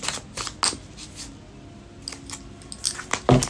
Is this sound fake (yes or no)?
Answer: no